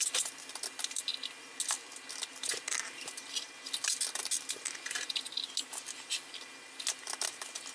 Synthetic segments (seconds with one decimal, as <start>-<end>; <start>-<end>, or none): none